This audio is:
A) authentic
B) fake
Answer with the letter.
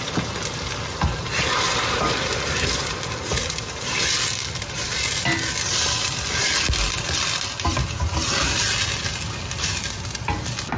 A